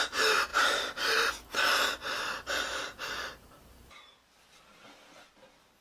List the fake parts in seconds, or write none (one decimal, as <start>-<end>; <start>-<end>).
0.5-4.0